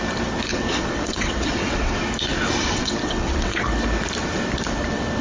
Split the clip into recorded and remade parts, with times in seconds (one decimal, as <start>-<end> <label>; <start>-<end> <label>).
0.0-0.5 recorded; 0.5-2.0 remade; 2.0-2.6 recorded; 2.6-3.6 remade; 3.6-5.2 recorded